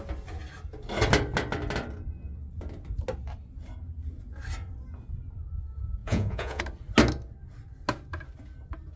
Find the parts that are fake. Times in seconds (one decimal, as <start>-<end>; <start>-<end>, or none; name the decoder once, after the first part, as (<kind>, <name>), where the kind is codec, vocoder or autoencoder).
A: 6.0-6.6 (vocoder, Vocos)